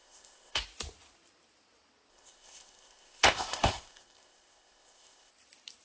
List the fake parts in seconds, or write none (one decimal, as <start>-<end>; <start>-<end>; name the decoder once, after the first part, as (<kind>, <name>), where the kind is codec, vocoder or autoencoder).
0.0-0.6 (codec, ZipCodec); 2.1-5.3